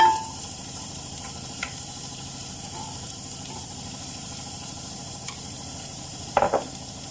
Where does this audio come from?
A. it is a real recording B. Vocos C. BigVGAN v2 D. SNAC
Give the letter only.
C